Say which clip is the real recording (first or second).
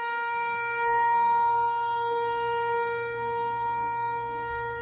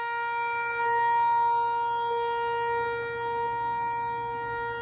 second